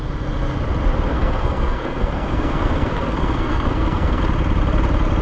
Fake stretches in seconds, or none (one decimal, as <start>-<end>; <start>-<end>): 1.1-4.2